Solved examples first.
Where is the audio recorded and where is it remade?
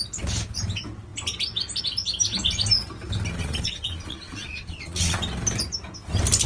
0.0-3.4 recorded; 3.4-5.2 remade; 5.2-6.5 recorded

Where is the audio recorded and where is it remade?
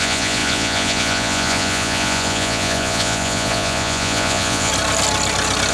0.0-4.7 remade; 4.7-5.7 recorded